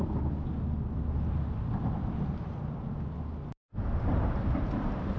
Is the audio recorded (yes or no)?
yes